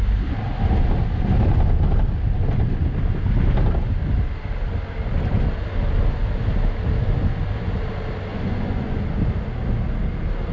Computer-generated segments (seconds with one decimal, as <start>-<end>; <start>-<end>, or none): 8.3-9.0